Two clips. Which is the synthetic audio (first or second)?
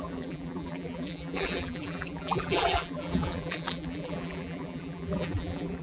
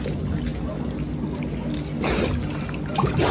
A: first